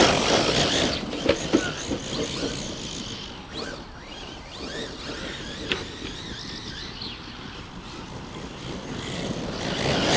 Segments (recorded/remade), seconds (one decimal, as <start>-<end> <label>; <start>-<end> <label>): 0.0-10.2 recorded